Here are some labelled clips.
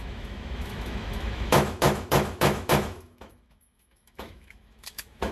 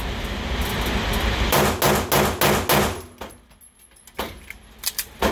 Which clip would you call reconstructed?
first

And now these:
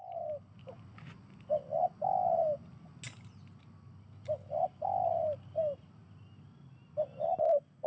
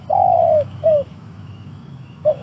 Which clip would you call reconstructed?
second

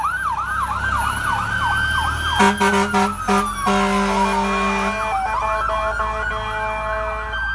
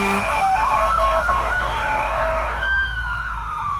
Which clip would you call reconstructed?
second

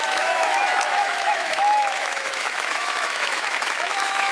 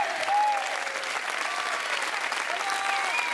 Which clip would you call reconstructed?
first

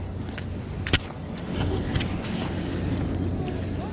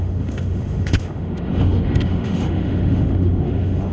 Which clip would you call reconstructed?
second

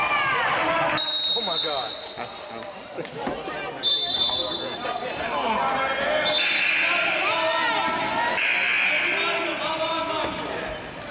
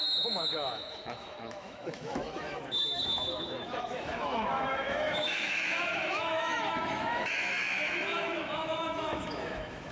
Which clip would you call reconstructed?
second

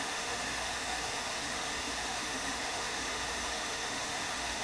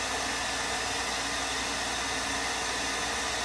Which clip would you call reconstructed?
first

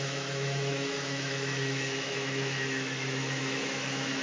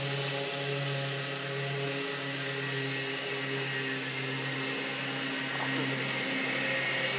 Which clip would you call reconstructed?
first